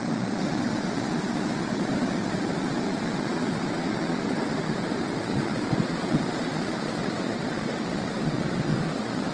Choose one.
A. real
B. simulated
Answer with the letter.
B